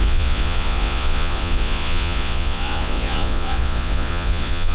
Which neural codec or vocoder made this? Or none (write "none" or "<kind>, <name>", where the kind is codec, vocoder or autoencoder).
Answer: vocoder, Vocos